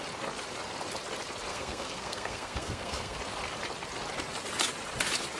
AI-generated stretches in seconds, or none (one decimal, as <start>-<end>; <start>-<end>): 1.5-3.2